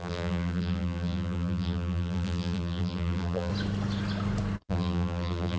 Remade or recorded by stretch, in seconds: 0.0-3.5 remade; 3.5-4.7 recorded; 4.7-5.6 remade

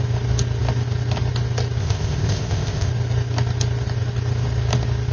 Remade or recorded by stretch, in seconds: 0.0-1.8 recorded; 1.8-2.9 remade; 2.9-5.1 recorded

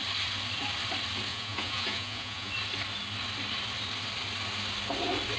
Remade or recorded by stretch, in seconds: 0.0-1.3 recorded; 1.3-2.5 remade; 2.5-5.4 recorded

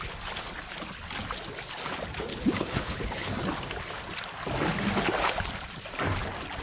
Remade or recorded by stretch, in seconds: 0.0-2.3 recorded; 2.3-3.4 remade; 3.4-6.6 recorded

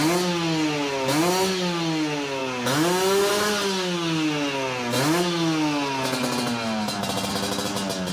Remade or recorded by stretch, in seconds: 0.0-8.1 recorded

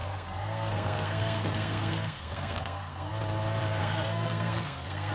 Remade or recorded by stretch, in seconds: 0.0-3.1 remade; 3.1-3.8 recorded; 3.8-5.1 remade

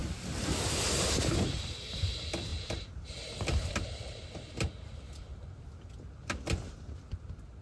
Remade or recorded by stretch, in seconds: 0.0-7.6 recorded